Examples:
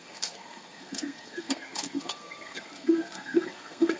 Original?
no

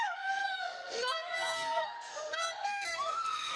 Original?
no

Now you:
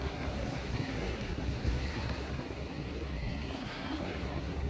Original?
no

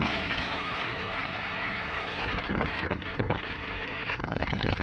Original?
no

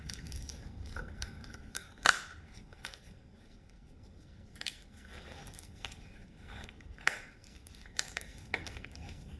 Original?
no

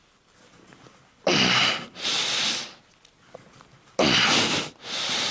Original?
yes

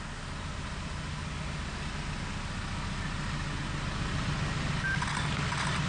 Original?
yes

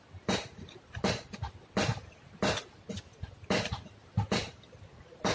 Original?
yes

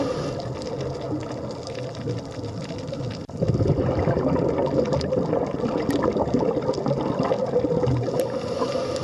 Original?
yes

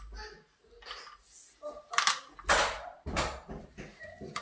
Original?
yes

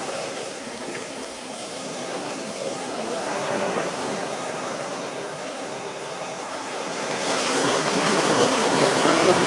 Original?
no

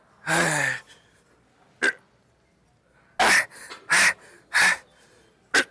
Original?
yes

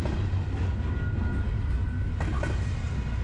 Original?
yes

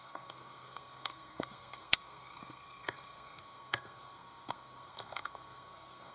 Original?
no